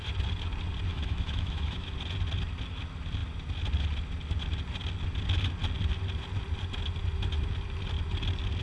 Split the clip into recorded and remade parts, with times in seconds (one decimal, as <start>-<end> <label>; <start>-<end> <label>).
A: 0.0-0.9 recorded; 0.9-1.9 remade; 1.9-8.6 recorded